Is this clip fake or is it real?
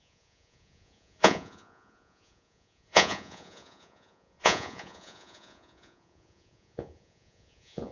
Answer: fake